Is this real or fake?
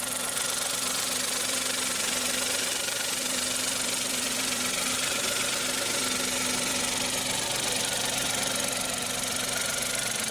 fake